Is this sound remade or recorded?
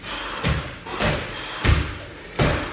recorded